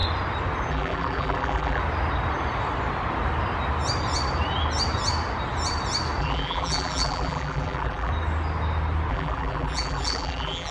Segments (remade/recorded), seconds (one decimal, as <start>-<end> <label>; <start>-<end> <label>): 0.0-0.7 recorded; 0.7-1.8 remade; 1.8-6.2 recorded; 6.2-8.1 remade; 8.1-9.1 recorded; 9.1-10.7 remade